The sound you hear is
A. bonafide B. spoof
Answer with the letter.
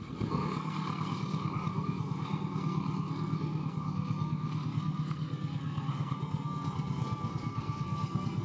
B